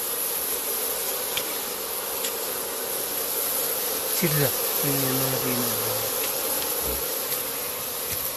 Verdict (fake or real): real